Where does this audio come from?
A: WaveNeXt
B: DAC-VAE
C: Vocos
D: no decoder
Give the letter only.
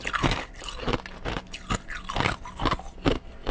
D